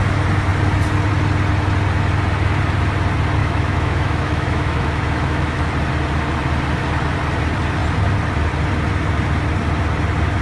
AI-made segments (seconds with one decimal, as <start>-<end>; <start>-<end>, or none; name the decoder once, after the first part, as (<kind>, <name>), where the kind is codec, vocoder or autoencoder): 3.4-5.7 (autoencoder, DAC-VAE)